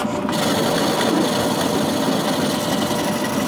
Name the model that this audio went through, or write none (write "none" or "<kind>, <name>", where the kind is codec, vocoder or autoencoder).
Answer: none